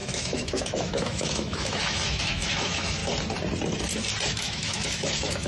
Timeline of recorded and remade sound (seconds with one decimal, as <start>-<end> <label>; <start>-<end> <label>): 0.0-3.0 remade; 3.0-4.3 recorded; 4.3-5.5 remade